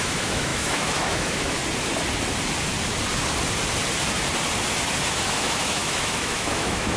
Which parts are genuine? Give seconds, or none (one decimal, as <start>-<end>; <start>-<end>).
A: 1.6-5.1